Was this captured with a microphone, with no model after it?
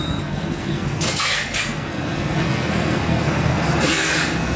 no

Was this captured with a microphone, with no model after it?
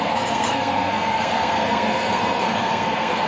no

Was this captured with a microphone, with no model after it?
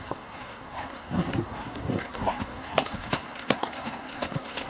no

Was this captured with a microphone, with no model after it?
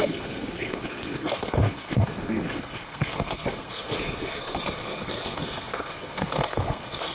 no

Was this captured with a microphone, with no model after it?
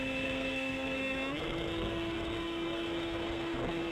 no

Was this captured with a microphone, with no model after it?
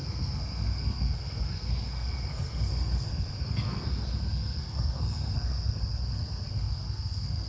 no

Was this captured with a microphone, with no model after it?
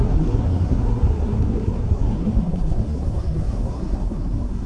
no